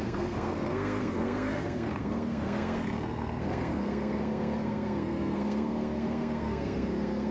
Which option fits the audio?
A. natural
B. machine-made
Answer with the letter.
B